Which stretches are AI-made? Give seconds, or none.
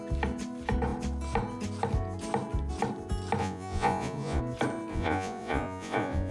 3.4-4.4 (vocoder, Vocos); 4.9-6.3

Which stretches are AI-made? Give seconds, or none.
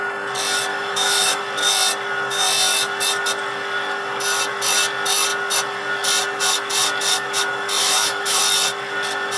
0.7-1.4 (autoencoder, DAC-VAE); 7.8-8.4